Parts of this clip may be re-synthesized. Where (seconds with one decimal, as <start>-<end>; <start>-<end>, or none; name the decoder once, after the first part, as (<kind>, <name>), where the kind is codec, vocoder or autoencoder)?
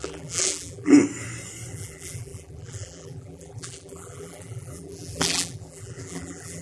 0.0-0.9 (vocoder, BigVGAN v2); 1.7-6.6